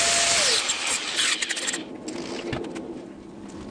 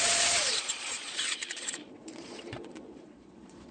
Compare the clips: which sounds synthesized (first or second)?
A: second